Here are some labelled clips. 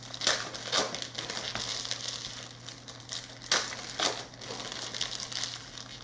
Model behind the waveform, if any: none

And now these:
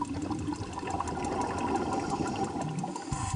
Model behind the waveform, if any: none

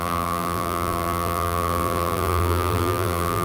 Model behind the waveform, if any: vocoder, BigVGAN v2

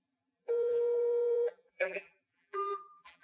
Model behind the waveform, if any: vocoder, BigVGAN v2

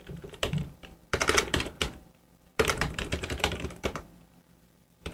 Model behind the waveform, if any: vocoder, BigVGAN v2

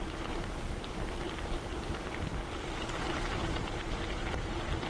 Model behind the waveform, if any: vocoder, BigVGAN v2